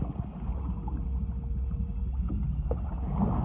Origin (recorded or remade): recorded